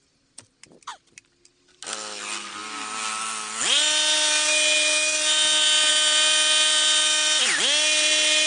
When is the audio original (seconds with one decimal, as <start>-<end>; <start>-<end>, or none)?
0.0-8.5